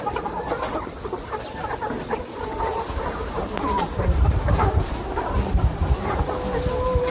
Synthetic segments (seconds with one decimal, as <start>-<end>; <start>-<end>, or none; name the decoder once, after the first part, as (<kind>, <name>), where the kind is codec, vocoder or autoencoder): 2.7-6.0 (vocoder, BigVGAN v2)